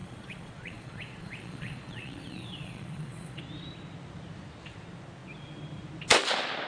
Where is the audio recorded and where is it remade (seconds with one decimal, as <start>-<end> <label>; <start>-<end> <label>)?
0.0-3.4 remade; 3.4-6.7 recorded